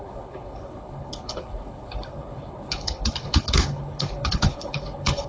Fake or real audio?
fake